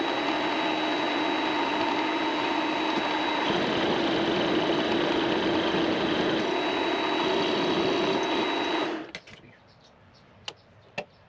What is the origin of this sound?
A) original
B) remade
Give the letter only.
A